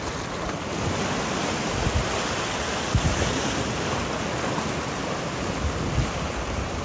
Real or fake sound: real